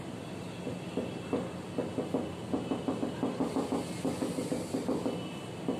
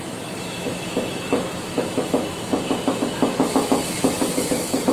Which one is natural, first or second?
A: first